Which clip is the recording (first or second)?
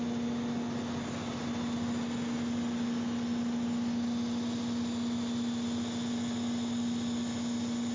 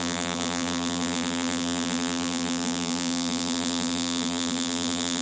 first